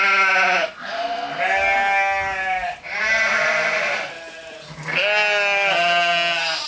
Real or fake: real